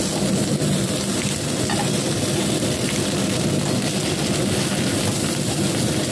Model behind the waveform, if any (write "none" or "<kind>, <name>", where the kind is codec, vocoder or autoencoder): none